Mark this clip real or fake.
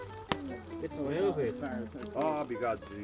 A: real